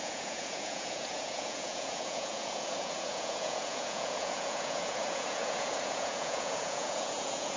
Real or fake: fake